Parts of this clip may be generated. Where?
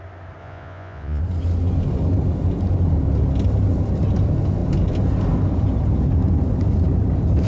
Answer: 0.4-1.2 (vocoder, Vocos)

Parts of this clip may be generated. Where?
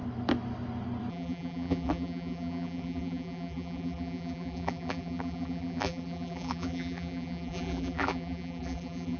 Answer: 1.1-9.2 (vocoder, BigVGAN v2)